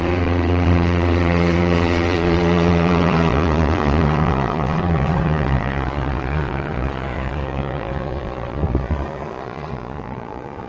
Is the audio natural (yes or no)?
no